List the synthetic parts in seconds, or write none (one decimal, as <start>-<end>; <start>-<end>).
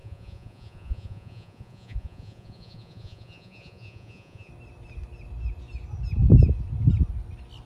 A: 0.0-4.5